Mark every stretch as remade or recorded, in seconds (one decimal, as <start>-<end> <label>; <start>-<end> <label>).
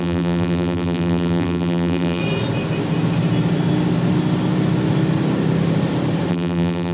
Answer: 0.0-2.2 remade; 2.2-6.3 recorded; 6.3-6.9 remade